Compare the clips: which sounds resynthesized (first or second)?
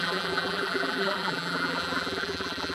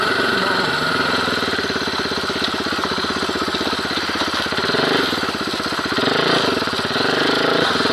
first